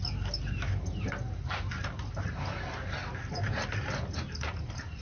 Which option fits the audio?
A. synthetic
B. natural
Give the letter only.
B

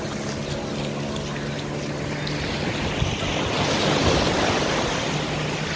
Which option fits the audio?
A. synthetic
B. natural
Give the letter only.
B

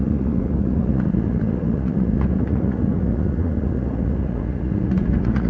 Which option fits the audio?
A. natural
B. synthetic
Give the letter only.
B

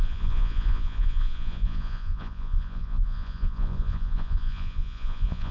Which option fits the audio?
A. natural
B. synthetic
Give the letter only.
B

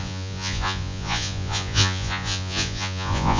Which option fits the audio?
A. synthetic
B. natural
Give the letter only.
A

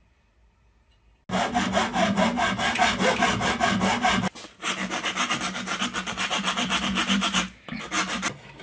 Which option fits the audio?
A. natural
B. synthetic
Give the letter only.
A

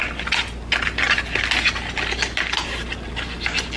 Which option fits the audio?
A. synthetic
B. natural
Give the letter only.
B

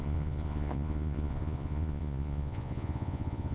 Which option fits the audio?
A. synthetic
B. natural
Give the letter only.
A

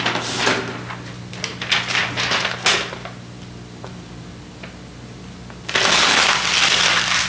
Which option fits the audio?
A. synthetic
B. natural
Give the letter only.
B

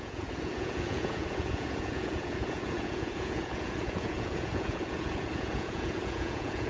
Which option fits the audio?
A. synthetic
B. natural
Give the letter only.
A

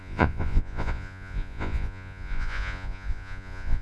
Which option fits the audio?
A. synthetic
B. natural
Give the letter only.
A